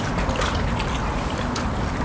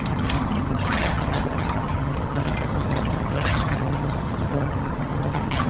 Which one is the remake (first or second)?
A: second